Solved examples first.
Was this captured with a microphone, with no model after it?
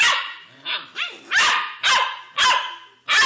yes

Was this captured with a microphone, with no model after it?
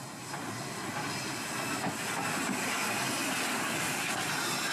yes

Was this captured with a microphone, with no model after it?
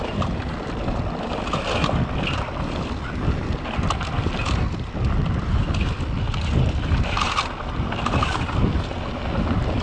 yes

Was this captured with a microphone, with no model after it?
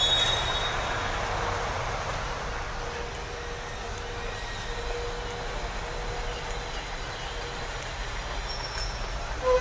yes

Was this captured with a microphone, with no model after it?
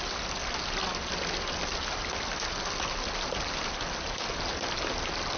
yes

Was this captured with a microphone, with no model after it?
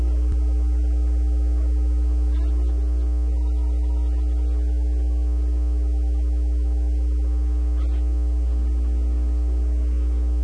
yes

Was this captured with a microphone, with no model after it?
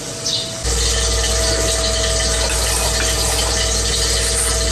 yes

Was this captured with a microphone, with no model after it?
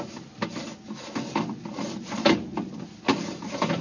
yes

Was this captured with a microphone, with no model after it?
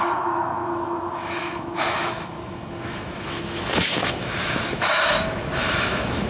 no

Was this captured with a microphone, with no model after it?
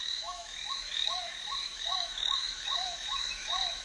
no